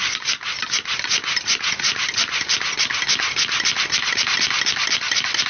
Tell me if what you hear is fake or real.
real